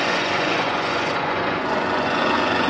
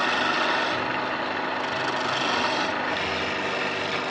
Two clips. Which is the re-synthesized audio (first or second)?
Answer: first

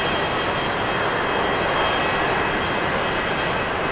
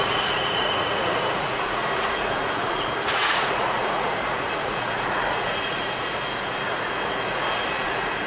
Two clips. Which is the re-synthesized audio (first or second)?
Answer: second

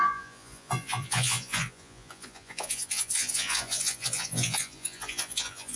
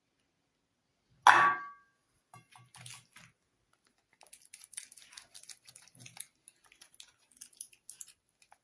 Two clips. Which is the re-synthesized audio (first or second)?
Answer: first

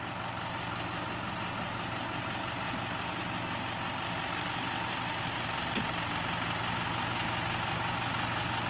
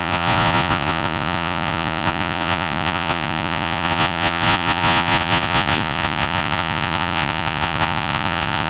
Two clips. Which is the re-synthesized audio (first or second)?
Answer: second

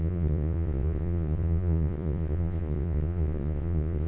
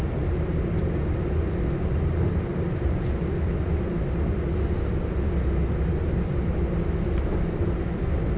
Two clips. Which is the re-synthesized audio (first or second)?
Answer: first